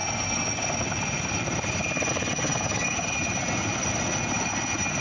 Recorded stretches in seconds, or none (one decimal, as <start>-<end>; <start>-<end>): 0.0-5.0

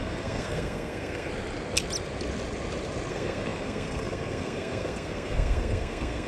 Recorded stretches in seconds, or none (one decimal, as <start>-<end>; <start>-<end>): 1.3-3.1